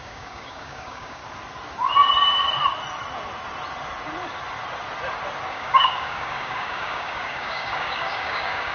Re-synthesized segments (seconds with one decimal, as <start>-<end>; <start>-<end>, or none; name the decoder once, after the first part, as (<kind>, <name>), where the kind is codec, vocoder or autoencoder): 0.0-1.2 (codec, DAC); 5.5-8.7